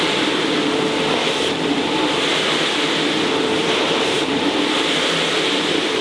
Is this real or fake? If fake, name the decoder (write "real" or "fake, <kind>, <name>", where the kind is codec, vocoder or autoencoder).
fake, vocoder, BigVGAN v2